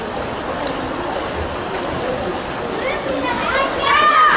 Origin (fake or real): real